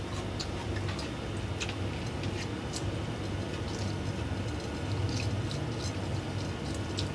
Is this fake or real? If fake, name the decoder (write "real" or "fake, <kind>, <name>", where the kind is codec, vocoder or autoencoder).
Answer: real